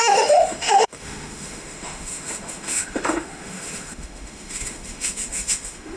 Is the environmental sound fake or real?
fake